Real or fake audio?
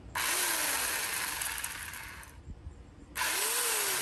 real